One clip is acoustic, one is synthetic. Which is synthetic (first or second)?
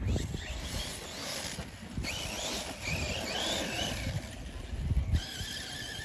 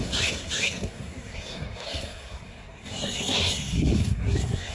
second